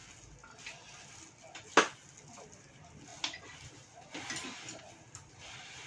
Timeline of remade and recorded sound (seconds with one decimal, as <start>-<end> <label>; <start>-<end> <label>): 0.0-5.9 recorded